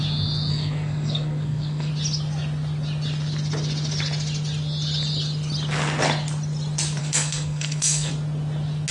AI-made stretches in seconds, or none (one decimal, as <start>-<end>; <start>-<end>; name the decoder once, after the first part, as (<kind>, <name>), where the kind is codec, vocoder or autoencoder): 0.5-1.9 (codec, SNAC); 7.0-8.1